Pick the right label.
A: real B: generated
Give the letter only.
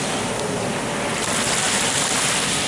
A